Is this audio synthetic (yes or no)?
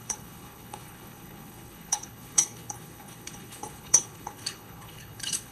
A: yes